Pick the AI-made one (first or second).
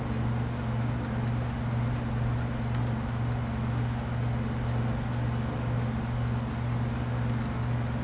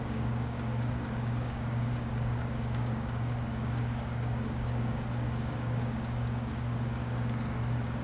second